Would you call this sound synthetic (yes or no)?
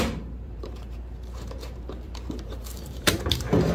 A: yes